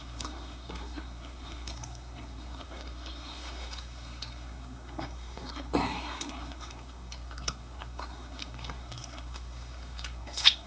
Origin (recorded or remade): remade